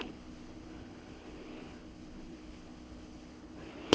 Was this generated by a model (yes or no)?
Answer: yes